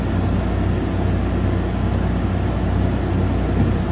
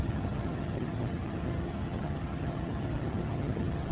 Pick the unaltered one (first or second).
first